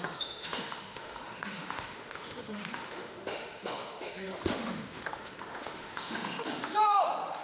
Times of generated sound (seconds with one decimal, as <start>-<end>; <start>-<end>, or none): 0.0-7.4